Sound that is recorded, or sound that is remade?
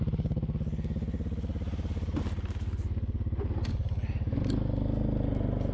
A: recorded